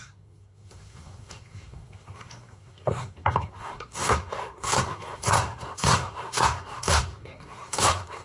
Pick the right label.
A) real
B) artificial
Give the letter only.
B